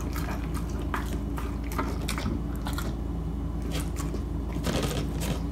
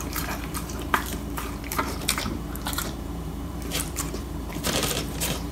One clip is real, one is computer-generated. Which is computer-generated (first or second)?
second